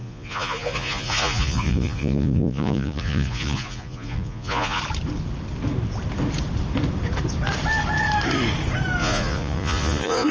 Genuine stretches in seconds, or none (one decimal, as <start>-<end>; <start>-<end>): 4.8-9.0